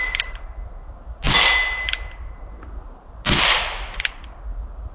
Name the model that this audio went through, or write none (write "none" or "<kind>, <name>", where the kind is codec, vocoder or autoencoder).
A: none